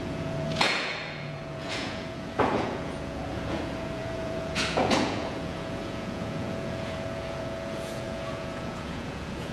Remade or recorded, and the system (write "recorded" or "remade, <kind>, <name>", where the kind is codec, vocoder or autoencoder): remade, vocoder, Vocos